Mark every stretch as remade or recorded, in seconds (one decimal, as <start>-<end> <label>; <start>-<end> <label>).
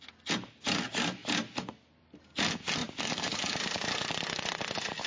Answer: 0.0-5.1 recorded